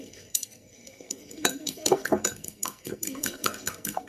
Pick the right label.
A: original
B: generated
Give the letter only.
B